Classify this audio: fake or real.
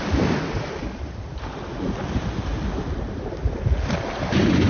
real